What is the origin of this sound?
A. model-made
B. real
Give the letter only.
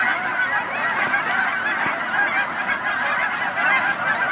B